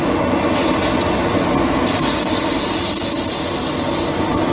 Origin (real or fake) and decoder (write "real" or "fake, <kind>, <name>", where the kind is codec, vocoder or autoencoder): real